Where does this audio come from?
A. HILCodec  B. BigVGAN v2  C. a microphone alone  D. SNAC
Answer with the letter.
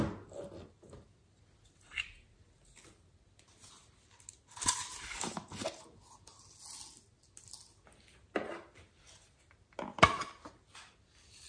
C